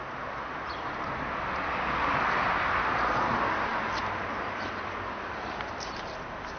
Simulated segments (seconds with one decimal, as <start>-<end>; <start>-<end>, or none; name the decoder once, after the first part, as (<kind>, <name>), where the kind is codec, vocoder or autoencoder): none

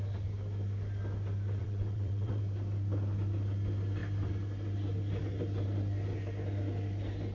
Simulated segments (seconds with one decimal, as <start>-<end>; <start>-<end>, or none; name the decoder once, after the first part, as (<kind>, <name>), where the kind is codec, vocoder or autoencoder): 1.6-2.4 (vocoder, WaveNeXt)

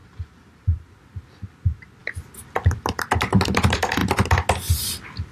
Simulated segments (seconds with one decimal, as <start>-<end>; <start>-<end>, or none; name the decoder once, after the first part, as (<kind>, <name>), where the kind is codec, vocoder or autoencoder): 0.0-0.9 (vocoder, BigVGAN v2)

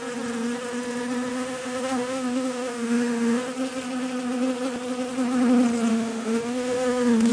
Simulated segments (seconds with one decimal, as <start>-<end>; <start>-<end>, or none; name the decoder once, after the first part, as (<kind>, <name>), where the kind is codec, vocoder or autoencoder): 1.3-3.4 (autoencoder, DAC-VAE); 5.9-7.3

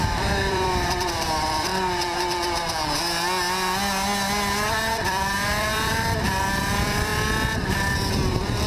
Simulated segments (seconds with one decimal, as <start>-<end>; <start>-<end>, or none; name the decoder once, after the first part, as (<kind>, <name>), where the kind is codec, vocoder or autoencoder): 0.0-1.7 (vocoder, BigVGAN v2); 4.9-7.1; 8.1-8.7